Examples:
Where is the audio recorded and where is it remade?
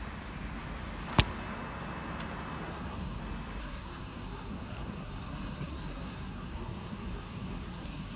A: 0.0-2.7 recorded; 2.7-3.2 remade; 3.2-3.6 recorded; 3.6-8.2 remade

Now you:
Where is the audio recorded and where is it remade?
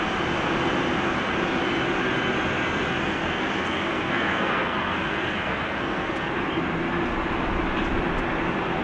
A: 0.0-3.0 recorded; 3.0-6.1 remade; 6.1-8.8 recorded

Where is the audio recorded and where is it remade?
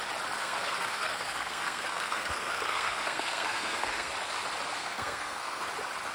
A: 0.0-0.4 recorded; 0.4-4.1 remade; 4.1-4.8 recorded; 4.8-5.6 remade; 5.6-6.1 recorded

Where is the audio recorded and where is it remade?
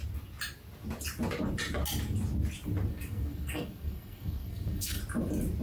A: 0.0-2.9 recorded; 2.9-5.0 remade; 5.0-5.6 recorded